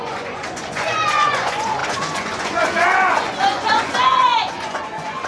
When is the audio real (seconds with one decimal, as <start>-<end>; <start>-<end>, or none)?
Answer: none